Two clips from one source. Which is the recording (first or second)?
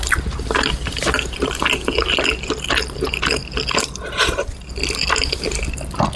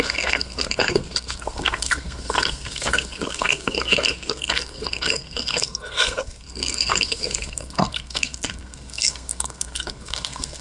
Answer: first